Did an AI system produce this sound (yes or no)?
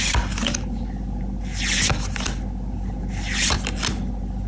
no